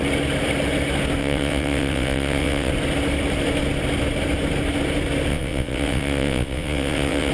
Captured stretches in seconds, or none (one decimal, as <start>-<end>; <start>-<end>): 0.0-1.2; 2.7-5.3